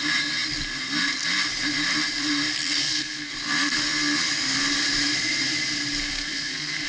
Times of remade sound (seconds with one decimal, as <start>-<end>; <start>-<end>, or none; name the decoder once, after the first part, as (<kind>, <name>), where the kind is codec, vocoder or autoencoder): 2.8-3.3 (codec, SNAC); 6.0-6.9